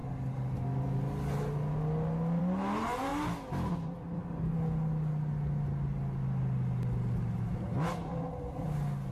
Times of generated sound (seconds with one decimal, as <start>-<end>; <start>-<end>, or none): none